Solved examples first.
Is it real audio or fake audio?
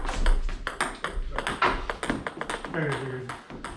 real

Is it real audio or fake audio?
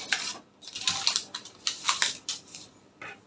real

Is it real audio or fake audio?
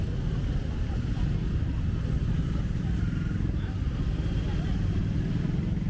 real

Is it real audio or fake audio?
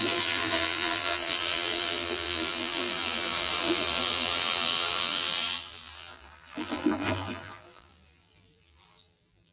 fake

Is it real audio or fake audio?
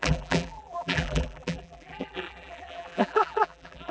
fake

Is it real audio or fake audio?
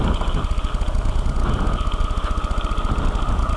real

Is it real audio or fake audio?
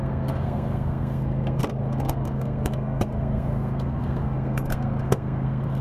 fake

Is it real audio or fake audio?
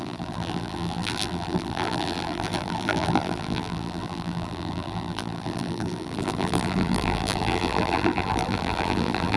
fake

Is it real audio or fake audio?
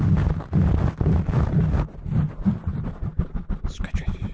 real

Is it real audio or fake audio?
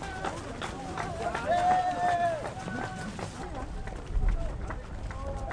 real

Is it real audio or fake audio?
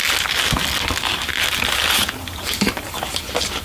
real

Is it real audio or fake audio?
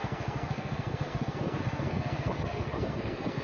fake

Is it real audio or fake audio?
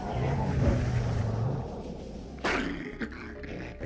real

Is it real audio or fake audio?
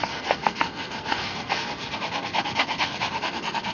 fake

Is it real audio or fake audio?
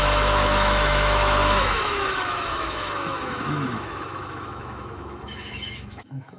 fake